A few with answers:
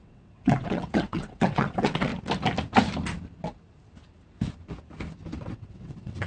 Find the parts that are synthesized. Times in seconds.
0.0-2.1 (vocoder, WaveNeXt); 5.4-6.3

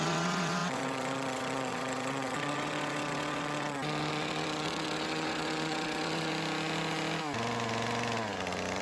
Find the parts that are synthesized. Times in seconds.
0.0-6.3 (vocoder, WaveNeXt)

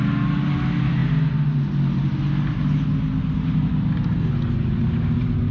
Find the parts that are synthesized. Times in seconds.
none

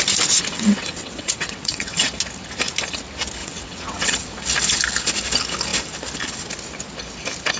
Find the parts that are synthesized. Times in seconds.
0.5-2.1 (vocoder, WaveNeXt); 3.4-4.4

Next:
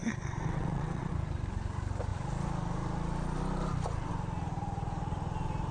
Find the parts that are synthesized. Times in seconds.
0.0-1.1 (vocoder, WaveNeXt)

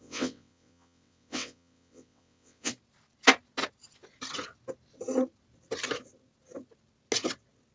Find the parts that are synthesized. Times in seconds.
0.0-2.7 (vocoder, WaveNeXt)